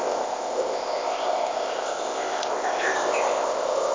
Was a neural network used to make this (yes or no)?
yes